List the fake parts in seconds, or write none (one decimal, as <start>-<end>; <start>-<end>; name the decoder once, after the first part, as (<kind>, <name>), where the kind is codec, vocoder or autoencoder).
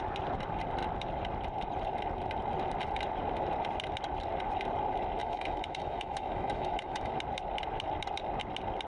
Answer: 5.2-7.1 (autoencoder, DAC-VAE)